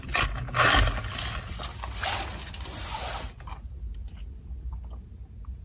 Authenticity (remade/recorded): recorded